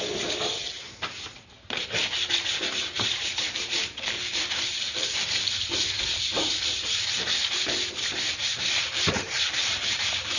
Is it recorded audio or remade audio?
remade